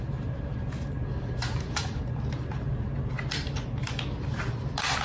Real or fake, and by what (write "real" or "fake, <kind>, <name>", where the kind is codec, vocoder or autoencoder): real